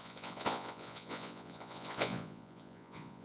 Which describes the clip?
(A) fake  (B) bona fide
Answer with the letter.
A